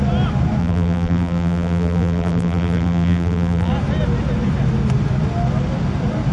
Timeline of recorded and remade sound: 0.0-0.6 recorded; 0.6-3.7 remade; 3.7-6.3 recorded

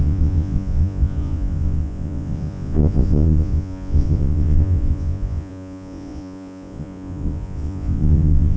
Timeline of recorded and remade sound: 0.0-8.6 remade